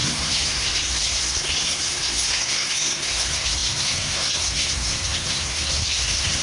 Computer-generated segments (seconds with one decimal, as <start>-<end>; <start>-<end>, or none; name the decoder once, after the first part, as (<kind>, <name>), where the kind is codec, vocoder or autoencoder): 0.0-6.4 (codec, SNAC)